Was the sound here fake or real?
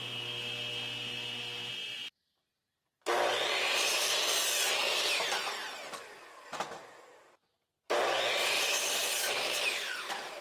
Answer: real